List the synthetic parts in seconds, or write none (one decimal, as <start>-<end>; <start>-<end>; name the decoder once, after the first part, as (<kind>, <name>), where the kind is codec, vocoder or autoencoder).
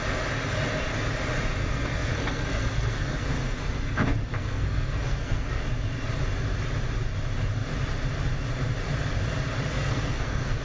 1.6-5.6 (codec, SNAC); 9.7-10.6